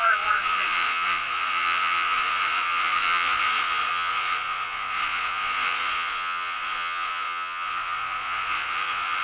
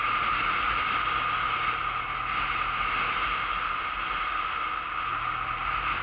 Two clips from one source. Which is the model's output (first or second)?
first